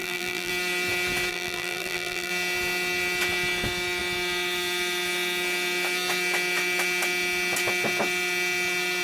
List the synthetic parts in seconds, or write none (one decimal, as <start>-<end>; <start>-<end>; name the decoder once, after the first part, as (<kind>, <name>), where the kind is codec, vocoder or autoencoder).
0.0-0.5 (vocoder, BigVGAN v2); 1.3-2.3